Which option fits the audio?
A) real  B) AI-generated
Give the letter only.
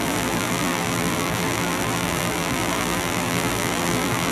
B